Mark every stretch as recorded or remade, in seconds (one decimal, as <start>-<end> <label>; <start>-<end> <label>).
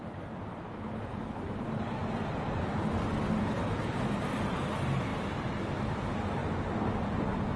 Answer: 0.0-6.4 remade; 6.4-7.6 recorded